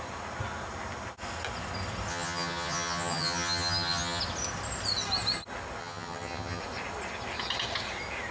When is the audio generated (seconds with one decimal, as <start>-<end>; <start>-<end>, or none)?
2.1-4.2; 5.8-6.6